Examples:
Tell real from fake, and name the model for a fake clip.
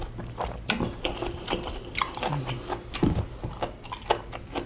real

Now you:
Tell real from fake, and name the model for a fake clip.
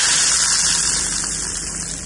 real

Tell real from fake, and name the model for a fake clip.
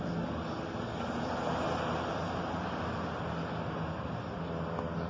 real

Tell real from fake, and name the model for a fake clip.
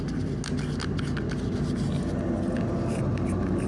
real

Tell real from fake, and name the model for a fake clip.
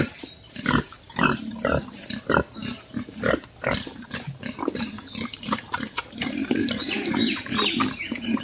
fake, vocoder, BigVGAN v2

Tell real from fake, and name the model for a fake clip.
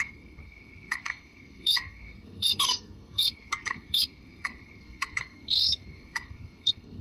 fake, codec, SNAC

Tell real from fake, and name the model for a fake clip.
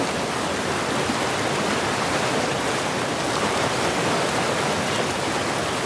real